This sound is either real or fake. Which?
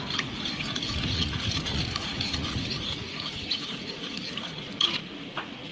fake